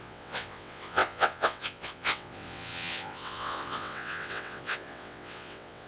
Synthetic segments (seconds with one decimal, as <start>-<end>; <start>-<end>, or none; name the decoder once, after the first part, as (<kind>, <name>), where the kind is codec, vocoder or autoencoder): 0.0-5.9 (vocoder, WaveNeXt)